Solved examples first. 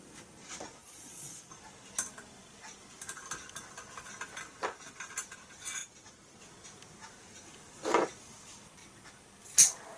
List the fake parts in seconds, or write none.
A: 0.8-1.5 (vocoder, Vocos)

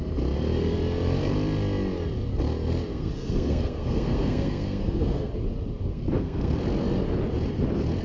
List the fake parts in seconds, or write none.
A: 2.9-5.3 (codec, SNAC); 5.9-6.6

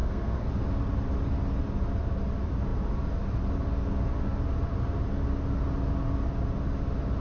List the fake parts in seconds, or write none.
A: 0.0-0.5 (codec, SNAC)

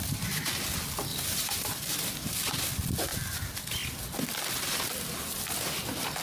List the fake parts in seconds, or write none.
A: 1.1-1.7 (vocoder, BigVGAN v2)

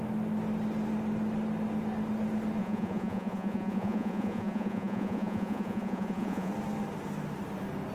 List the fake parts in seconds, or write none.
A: 2.6-6.5 (vocoder, Vocos)

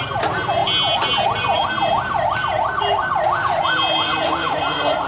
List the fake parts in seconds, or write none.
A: none

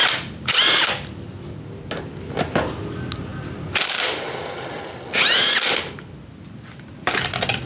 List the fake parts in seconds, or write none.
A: none

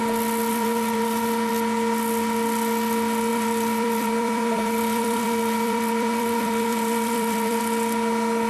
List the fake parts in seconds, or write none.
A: 0.5-1.5 (vocoder, BigVGAN v2); 3.3-7.6